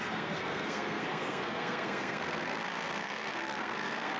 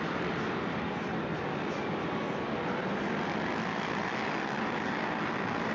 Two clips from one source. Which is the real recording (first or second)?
second